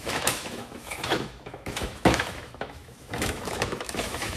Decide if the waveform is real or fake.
fake